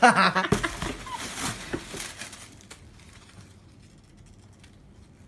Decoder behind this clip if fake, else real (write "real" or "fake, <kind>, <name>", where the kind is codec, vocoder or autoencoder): real